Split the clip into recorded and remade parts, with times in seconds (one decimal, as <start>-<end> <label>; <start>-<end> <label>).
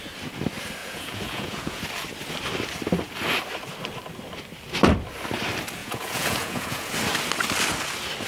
0.0-0.8 recorded; 0.8-1.8 remade; 1.8-5.8 recorded; 5.8-6.9 remade; 6.9-8.3 recorded